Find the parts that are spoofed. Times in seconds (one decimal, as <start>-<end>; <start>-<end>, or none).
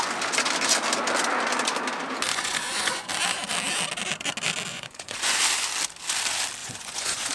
2.3-3.1; 4.7-5.4; 6.6-7.3